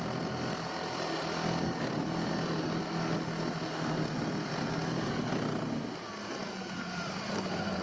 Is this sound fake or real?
real